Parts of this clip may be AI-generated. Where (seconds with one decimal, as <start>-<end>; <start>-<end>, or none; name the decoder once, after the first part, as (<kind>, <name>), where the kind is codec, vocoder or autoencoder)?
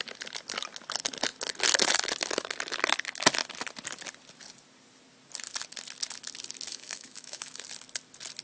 6.7-7.6 (autoencoder, DAC-VAE)